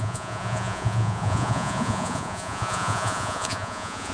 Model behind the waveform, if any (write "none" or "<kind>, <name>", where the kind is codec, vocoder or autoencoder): vocoder, Vocos